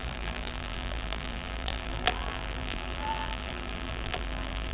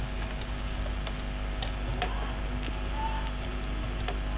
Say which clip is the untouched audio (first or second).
second